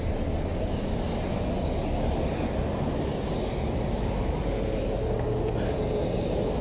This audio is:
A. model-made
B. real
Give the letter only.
B